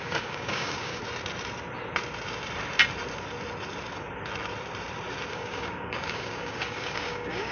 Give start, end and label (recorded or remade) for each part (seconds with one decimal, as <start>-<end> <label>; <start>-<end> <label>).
0.0-1.0 remade; 1.0-5.3 recorded; 5.3-7.5 remade

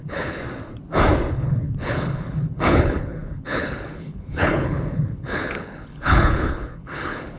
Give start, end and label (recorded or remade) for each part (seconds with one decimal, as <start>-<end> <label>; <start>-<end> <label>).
0.0-0.4 remade; 0.4-1.3 recorded; 1.3-7.4 remade